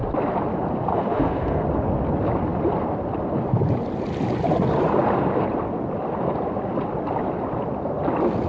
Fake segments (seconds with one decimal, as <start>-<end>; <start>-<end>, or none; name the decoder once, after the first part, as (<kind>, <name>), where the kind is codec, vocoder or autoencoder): 0.9-1.6 (codec, SNAC)